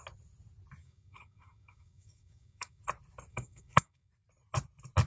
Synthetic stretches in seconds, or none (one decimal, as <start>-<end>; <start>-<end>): 0.8-2.8; 3.3-4.1